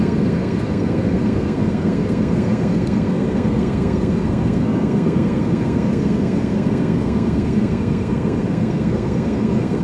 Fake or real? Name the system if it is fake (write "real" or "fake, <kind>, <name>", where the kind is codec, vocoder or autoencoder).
fake, codec, SNAC